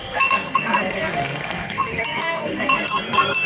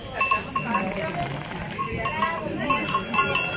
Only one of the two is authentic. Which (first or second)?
second